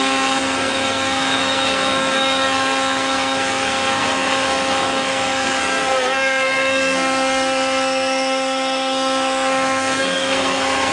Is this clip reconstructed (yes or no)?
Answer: yes